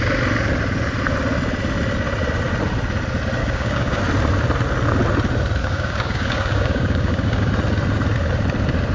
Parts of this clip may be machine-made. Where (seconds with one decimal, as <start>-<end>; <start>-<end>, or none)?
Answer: 3.4-4.0; 5.6-7.5